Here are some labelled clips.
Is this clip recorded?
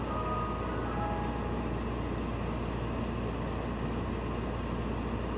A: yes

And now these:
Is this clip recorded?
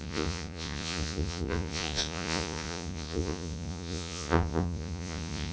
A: no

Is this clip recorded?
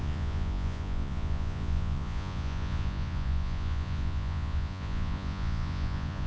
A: no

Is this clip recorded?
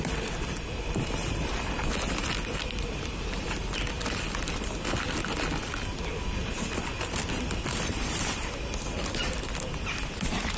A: yes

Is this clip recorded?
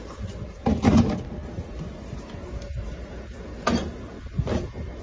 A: yes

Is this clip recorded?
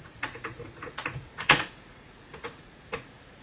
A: no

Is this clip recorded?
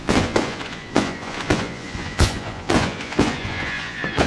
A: no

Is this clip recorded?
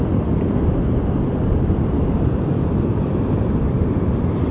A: yes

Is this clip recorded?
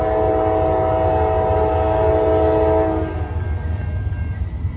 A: yes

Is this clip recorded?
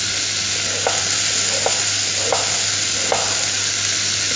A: yes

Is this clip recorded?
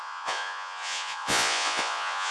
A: no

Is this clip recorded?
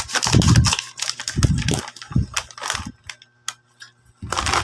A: yes